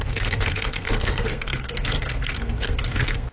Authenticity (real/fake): fake